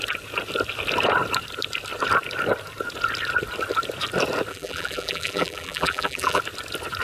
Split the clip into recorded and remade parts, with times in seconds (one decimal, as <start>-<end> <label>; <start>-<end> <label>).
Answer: 0.0-4.5 recorded; 4.5-6.4 remade; 6.4-7.0 recorded